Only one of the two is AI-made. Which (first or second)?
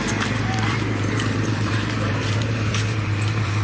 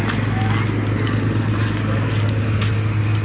first